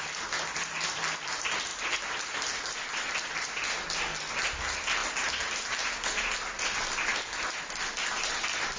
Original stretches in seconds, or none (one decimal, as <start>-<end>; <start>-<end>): 0.0-8.8